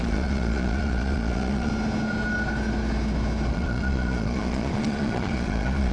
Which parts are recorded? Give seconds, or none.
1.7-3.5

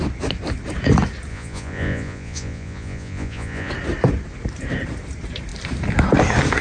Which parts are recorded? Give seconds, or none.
0.0-1.3; 3.7-6.6

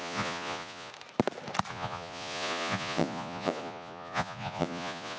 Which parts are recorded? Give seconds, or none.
0.9-1.7

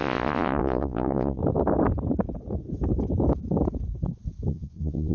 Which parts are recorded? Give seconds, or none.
1.4-4.5